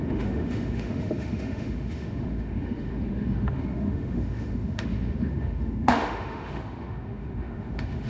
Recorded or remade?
remade